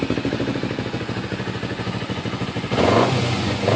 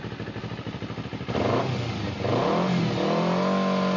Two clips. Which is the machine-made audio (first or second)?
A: first